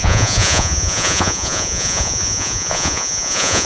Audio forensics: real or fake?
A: fake